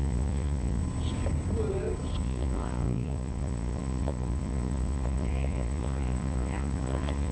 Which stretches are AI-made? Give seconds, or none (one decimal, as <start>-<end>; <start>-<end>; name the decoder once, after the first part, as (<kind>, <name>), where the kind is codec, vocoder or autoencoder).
0.0-0.8 (vocoder, Vocos); 2.2-7.3